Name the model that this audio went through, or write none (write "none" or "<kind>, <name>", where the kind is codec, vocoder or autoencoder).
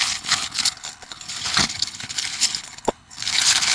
codec, HILCodec